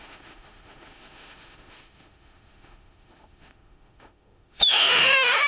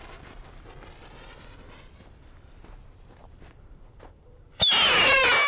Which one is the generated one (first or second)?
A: first